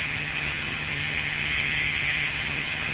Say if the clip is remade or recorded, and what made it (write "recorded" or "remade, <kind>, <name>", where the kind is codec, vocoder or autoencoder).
remade, vocoder, HiFi-GAN